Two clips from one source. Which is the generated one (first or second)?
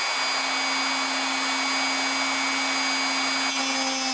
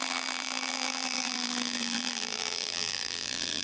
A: second